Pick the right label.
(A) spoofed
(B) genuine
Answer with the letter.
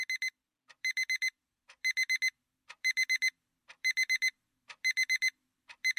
B